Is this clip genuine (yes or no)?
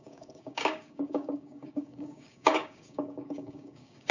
no